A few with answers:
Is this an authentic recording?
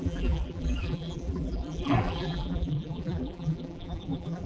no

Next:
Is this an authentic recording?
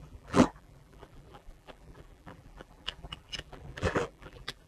no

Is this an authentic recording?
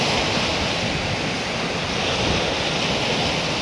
yes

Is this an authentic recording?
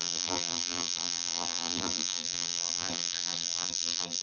no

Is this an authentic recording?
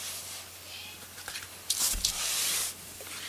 no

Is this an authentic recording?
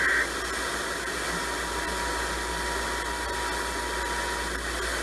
yes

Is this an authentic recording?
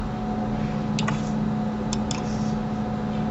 yes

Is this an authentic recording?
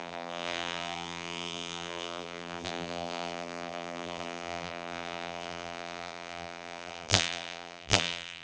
no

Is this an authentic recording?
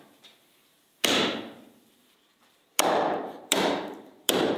no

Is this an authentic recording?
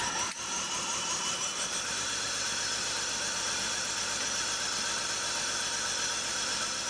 yes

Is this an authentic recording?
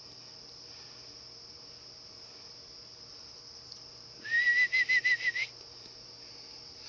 yes